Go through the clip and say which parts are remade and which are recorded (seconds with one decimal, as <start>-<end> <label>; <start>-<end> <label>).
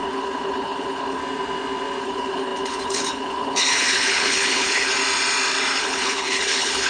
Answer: 0.0-1.2 remade; 1.2-2.0 recorded; 2.0-4.9 remade; 4.9-5.8 recorded; 5.8-6.9 remade